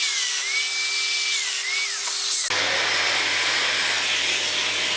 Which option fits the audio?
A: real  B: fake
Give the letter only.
A